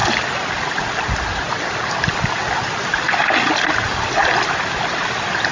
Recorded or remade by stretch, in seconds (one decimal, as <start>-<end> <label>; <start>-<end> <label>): 0.0-5.5 recorded